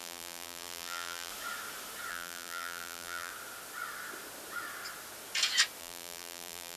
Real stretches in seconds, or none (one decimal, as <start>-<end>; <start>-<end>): 1.3-2.1; 3.3-5.8